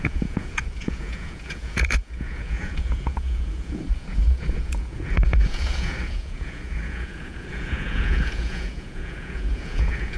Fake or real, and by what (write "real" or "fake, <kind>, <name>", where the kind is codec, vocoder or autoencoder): fake, vocoder, Vocos